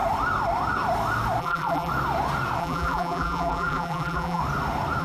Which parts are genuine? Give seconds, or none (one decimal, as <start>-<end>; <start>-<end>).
0.0-1.4; 1.9-2.6; 4.4-5.0